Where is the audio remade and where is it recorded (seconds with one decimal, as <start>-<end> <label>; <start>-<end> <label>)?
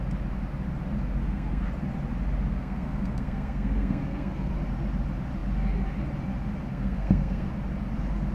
0.0-1.2 recorded; 1.2-1.7 remade; 1.7-2.5 recorded; 2.5-4.5 remade; 4.5-6.7 recorded; 6.7-7.5 remade; 7.5-8.3 recorded